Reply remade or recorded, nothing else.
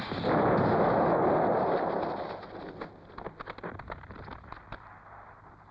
recorded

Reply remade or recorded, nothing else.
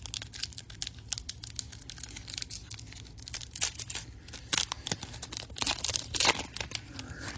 recorded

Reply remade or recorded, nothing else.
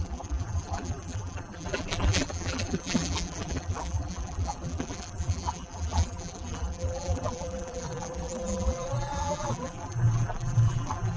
remade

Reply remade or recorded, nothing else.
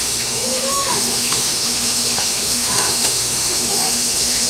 remade